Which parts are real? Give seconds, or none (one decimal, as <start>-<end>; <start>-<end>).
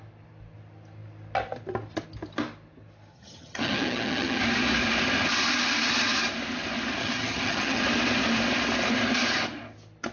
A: 0.0-3.1; 4.4-7.0; 7.8-10.1